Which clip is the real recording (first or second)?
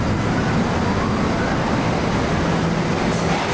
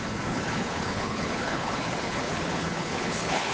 first